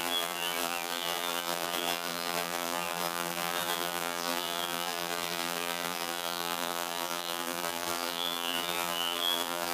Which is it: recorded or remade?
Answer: remade